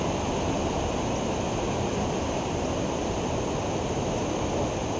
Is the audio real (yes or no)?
yes